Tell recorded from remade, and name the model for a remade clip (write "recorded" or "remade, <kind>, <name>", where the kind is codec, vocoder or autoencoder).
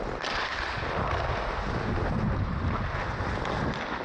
recorded